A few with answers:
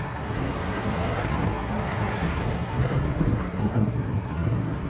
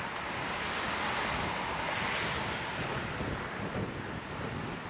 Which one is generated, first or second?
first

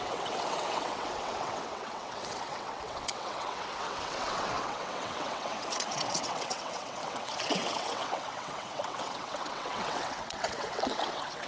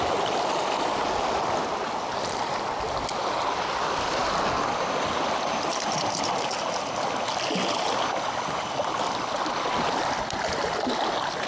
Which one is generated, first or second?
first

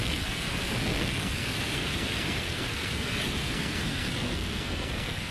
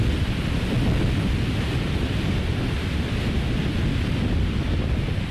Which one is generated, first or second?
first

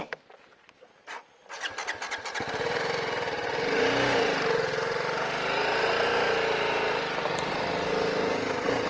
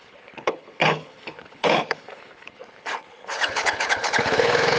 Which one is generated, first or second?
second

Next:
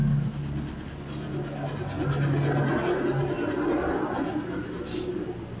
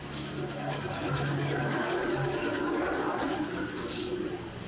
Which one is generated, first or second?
second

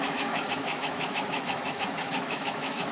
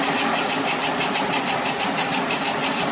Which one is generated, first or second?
first